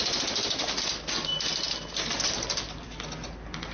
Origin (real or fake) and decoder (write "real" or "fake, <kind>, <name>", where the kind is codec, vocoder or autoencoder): real